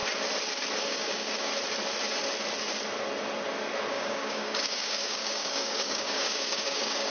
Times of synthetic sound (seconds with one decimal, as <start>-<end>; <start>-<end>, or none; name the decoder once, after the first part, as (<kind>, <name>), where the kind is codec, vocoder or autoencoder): 0.8-1.5 (codec, DAC); 3.9-7.1